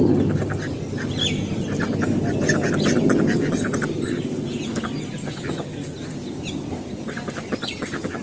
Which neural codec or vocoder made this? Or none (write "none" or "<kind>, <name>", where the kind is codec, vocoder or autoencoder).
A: none